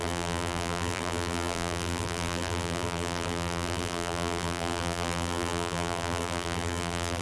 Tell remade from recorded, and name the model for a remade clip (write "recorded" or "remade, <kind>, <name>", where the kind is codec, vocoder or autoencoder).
remade, vocoder, BigVGAN v2